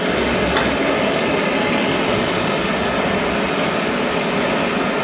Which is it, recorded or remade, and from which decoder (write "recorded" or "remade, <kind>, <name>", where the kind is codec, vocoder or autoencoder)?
recorded